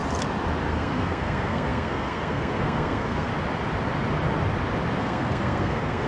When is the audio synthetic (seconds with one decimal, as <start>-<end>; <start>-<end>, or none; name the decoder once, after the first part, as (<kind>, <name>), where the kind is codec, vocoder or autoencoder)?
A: 0.7-3.3 (codec, SNAC); 5.0-6.1